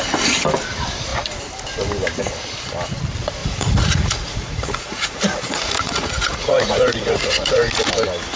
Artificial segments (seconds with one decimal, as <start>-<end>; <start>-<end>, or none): 3.4-7.9